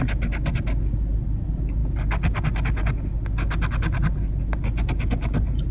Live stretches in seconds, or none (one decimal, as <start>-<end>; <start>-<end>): 0.0-5.7